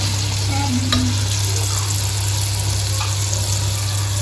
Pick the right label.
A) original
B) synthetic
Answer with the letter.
A